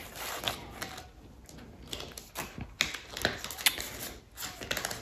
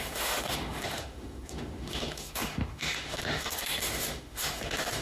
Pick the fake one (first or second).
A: second